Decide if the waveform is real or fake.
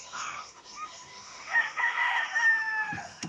fake